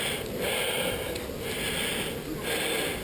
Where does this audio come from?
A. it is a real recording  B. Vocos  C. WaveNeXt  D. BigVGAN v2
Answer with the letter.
A